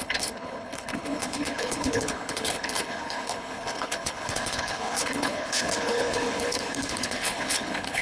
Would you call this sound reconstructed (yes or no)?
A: yes